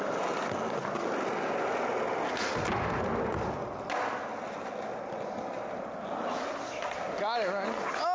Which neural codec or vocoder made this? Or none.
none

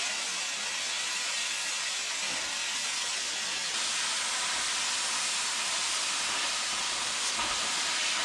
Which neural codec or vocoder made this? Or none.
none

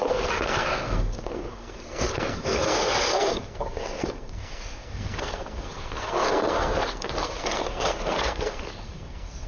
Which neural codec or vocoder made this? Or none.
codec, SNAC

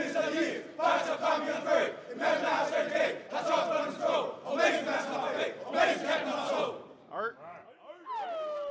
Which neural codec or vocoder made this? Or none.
none